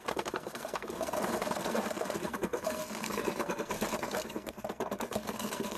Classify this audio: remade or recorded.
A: remade